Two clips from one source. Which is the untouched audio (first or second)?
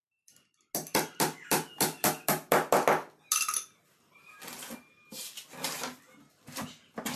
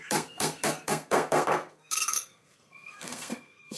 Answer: first